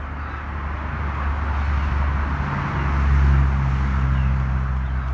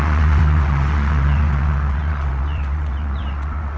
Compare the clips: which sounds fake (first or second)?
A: second